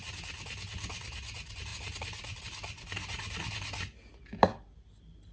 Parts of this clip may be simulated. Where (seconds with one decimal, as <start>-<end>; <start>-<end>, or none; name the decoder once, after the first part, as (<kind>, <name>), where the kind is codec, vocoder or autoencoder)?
none